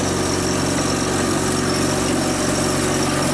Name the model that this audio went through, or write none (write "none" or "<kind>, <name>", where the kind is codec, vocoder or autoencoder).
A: none